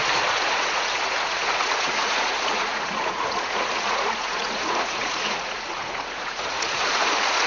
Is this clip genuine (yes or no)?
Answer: no